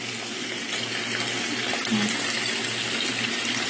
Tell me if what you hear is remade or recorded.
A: recorded